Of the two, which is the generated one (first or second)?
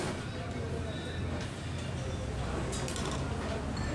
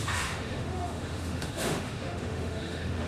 second